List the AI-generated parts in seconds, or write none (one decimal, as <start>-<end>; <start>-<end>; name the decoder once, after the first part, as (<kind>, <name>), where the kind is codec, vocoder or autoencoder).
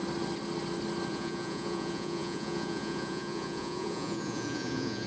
1.1-5.1 (vocoder, Vocos)